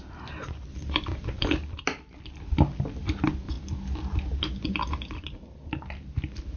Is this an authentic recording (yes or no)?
yes